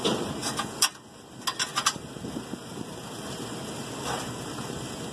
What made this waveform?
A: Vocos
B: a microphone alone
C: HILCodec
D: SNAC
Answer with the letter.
B